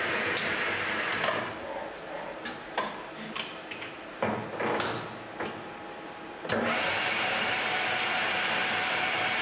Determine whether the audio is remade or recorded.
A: recorded